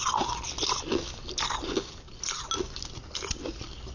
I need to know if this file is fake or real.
real